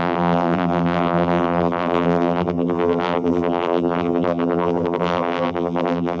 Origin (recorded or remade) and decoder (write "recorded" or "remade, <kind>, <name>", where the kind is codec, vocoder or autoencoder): remade, vocoder, BigVGAN v2